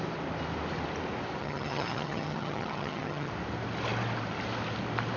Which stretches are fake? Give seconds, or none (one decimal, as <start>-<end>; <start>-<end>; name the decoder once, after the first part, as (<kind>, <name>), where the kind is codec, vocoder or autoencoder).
1.4-3.3 (vocoder, HiFi-GAN)